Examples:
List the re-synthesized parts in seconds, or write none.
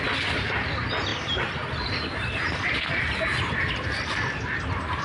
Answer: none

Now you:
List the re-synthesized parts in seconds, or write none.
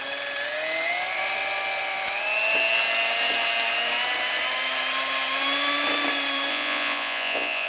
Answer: 6.5-7.7 (vocoder, Vocos)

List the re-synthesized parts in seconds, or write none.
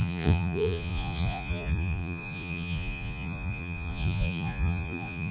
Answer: 0.0-5.3 (vocoder, Vocos)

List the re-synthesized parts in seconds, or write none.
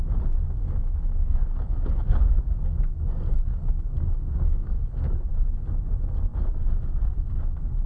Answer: 0.6-5.3 (codec, DAC)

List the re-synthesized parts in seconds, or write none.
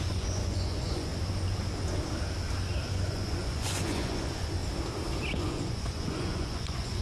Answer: 0.0-1.1 (vocoder, Vocos); 2.9-4.6; 5.4-7.0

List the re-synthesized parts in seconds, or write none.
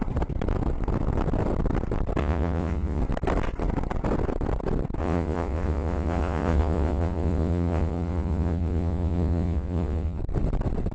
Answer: 2.2-3.0 (vocoder, Vocos); 5.0-10.2